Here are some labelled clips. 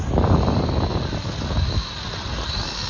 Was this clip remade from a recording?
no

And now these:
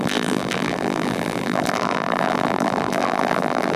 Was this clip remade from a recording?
yes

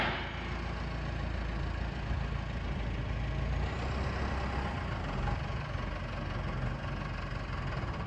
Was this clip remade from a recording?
no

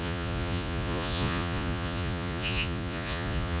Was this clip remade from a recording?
yes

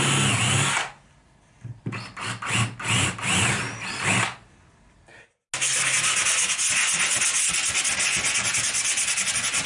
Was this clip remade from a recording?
no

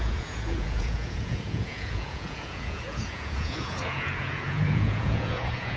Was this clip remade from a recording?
yes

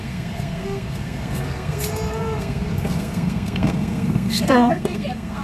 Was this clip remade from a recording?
yes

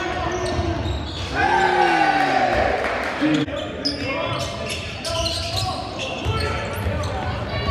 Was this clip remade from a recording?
no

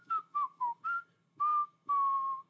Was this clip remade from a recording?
no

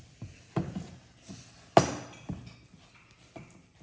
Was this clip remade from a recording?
no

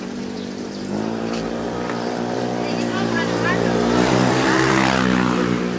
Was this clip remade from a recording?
yes